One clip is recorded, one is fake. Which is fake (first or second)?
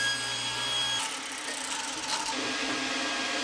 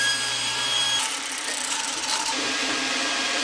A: second